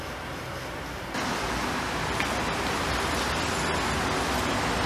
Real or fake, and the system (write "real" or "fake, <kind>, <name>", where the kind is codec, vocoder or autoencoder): real